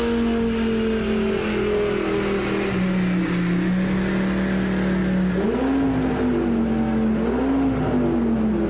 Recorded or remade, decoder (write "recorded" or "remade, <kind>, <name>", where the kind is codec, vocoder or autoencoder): recorded